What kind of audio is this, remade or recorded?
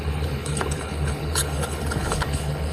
remade